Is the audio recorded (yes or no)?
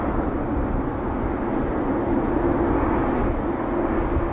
yes